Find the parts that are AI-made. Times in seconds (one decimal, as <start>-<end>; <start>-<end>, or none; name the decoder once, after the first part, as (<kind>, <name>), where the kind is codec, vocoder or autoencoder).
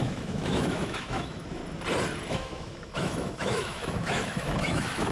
0.0-1.6 (autoencoder, DAC-VAE); 2.3-5.1